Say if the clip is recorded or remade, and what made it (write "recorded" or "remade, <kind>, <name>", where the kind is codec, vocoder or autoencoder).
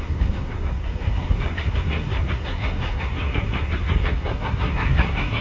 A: remade, codec, SNAC